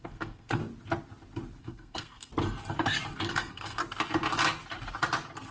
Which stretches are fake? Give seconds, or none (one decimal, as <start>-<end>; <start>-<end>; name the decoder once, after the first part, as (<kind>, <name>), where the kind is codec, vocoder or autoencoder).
0.0-0.6 (codec, SNAC); 1.6-2.3; 3.2-3.8